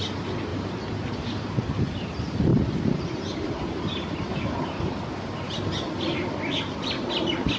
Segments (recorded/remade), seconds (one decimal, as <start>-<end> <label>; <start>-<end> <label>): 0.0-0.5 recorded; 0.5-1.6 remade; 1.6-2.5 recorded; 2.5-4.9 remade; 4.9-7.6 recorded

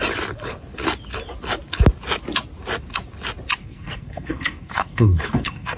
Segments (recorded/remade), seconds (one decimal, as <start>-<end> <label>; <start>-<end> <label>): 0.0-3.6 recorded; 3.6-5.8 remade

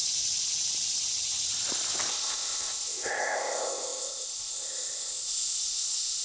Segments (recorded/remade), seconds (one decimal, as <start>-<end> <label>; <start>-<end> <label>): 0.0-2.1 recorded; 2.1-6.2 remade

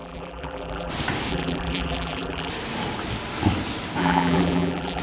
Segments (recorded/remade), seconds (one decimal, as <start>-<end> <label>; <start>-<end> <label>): 0.0-0.9 remade; 0.9-1.3 recorded; 1.3-2.5 remade; 2.5-4.0 recorded; 4.0-5.0 remade

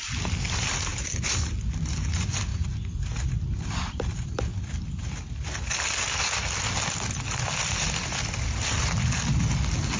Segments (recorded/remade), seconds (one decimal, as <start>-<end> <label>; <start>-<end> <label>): 0.0-10.0 recorded

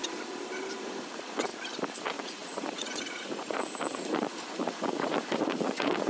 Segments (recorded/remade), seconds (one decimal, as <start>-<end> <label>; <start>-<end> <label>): 0.0-0.8 recorded; 0.8-1.5 remade; 1.5-2.0 recorded; 2.0-6.1 remade

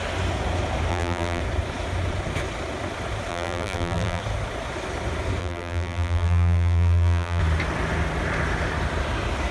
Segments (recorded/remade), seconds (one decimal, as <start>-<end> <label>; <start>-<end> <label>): 0.0-0.9 recorded; 0.9-1.4 remade; 1.4-3.3 recorded; 3.3-4.2 remade; 4.2-5.4 recorded; 5.4-7.4 remade; 7.4-9.5 recorded